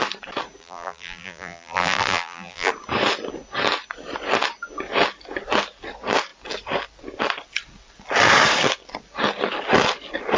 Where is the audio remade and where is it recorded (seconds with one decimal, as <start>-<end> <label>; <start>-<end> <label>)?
0.0-0.6 recorded; 0.6-2.7 remade; 2.7-10.4 recorded